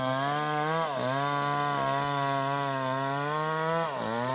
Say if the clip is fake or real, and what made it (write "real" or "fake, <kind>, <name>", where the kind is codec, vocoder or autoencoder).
real